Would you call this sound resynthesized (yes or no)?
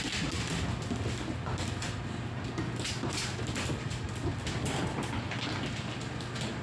no